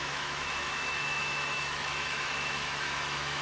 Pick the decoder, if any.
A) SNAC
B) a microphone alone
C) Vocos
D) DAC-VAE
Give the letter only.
D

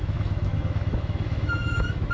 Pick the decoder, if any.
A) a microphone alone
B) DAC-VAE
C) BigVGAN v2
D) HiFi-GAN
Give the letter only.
B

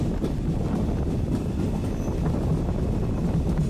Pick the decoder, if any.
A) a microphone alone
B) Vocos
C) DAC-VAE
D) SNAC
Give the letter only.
A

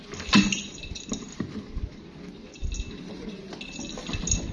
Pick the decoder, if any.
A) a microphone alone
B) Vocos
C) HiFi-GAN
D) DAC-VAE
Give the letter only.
A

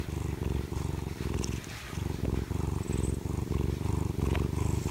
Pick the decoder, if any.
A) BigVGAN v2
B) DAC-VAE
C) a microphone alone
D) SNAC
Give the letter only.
C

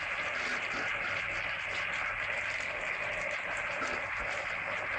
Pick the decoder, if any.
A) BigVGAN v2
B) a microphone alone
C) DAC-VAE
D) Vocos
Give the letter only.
B